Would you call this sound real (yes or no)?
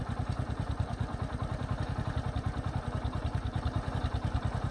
no